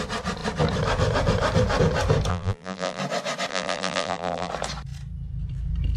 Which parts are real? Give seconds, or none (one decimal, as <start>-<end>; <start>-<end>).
0.0-2.3; 3.0-3.5; 4.5-6.0